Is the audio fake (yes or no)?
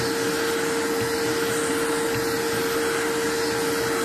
no